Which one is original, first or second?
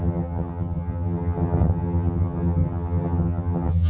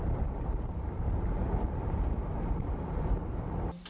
second